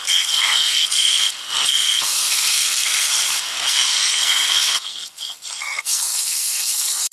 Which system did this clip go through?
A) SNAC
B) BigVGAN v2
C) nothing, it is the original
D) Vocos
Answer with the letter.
A